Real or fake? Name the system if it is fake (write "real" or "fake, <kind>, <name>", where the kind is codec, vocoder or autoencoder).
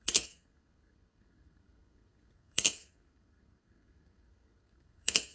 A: fake, codec, SNAC